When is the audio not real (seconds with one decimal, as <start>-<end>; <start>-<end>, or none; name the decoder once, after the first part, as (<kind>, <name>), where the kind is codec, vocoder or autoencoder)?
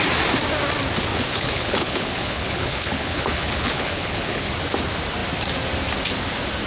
1.1-4.5 (codec, HILCodec)